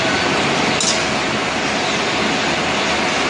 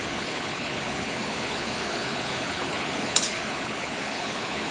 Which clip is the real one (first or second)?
first